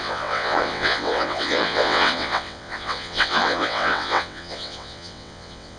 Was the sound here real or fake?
fake